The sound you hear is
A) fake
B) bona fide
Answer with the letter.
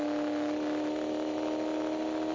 B